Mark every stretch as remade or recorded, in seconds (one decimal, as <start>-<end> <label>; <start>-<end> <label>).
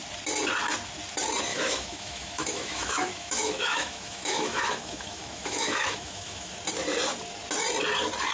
0.0-1.5 recorded; 1.5-6.5 remade; 6.5-8.3 recorded